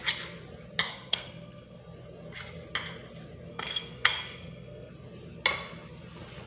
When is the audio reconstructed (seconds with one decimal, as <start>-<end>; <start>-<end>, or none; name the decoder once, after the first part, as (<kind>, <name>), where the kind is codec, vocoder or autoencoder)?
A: 0.9-1.8 (codec, SNAC); 3.5-4.9